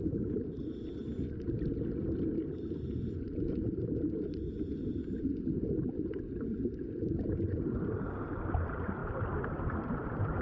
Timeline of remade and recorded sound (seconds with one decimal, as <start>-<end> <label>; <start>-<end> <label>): 0.0-10.4 remade